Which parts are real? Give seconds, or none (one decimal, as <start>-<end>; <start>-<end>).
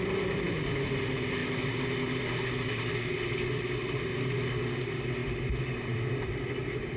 0.0-7.0